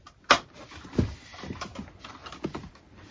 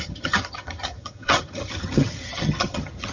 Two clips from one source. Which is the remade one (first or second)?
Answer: second